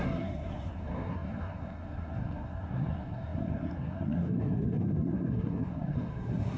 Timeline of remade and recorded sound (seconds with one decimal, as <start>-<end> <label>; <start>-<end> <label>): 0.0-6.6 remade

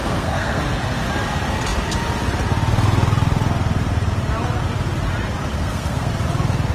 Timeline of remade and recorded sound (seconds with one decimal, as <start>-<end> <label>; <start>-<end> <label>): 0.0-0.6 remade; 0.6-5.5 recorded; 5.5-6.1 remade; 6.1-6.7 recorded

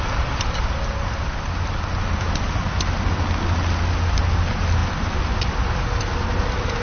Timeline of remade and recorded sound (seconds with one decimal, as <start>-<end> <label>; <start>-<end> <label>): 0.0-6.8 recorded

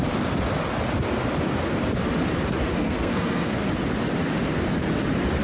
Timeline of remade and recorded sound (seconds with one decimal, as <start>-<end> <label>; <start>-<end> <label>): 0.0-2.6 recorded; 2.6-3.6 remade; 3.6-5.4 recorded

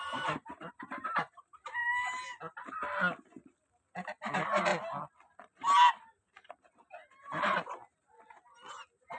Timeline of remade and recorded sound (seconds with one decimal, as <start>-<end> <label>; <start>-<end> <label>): 0.0-1.8 remade; 1.8-4.2 recorded; 4.2-4.7 remade; 4.7-9.2 recorded

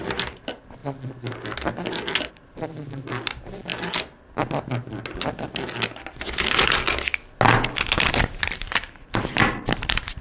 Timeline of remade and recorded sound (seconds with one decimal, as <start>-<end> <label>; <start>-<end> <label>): 0.0-0.8 remade; 0.8-2.3 recorded; 2.3-3.7 remade; 3.7-8.1 recorded; 8.1-10.2 remade